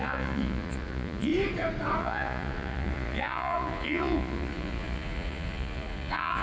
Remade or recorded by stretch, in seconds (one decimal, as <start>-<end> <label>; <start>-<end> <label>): 0.0-1.3 remade; 1.3-2.0 recorded; 2.0-6.4 remade